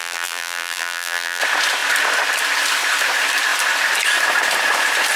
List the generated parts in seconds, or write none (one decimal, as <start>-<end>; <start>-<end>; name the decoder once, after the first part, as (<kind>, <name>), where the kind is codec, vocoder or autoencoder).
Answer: 0.0-1.4 (vocoder, BigVGAN v2)